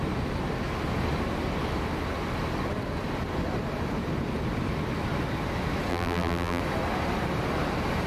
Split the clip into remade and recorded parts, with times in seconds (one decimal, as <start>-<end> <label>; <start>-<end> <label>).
0.0-5.9 recorded; 5.9-6.6 remade; 6.6-8.1 recorded